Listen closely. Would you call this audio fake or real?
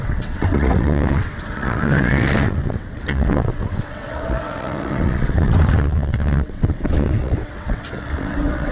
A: fake